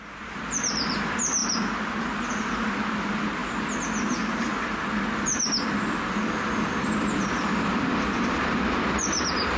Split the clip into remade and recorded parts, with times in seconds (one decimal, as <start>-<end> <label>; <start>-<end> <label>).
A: 0.0-3.4 remade; 3.4-5.1 recorded; 5.1-9.6 remade